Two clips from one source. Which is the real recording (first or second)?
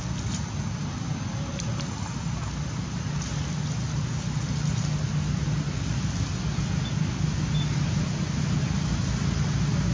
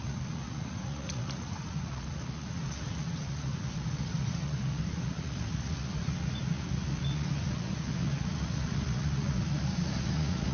first